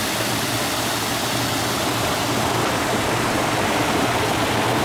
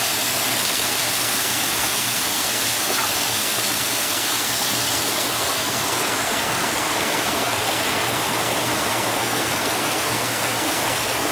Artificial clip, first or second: second